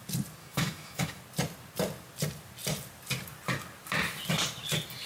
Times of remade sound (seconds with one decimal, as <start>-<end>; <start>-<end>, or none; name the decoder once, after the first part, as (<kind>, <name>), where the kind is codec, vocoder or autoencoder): 0.4-1.2 (autoencoder, DAC-VAE)